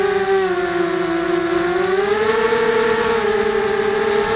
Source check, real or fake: real